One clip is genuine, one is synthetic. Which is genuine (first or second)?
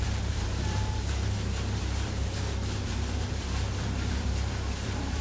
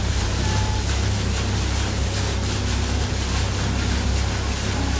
second